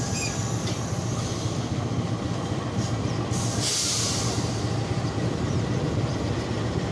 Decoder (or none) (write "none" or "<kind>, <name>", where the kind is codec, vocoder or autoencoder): none